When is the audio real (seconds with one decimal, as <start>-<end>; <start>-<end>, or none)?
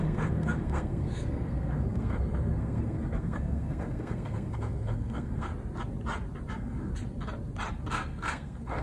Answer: 5.5-6.5; 6.9-7.9